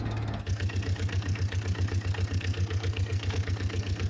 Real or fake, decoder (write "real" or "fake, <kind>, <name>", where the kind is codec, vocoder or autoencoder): fake, codec, SNAC